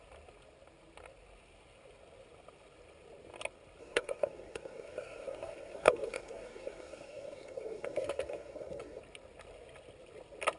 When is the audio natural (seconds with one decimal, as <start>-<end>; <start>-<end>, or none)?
0.0-3.8; 9.0-10.6